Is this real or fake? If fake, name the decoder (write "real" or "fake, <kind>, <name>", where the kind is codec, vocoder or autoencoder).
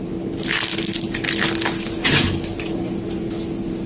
real